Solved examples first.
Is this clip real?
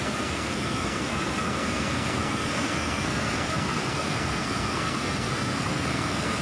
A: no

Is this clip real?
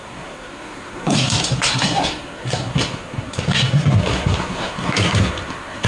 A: no